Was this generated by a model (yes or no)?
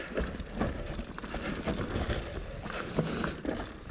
no